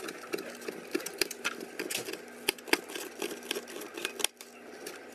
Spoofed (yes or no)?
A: no